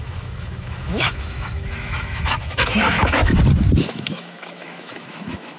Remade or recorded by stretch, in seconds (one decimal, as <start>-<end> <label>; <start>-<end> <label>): 0.0-3.3 remade; 3.3-3.9 recorded; 3.9-5.6 remade